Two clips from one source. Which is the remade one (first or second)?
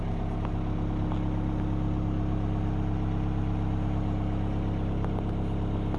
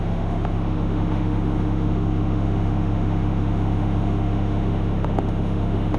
second